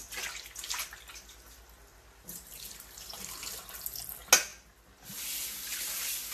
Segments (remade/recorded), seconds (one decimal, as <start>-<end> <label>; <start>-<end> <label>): 0.0-1.9 recorded; 1.9-3.7 remade; 3.7-6.3 recorded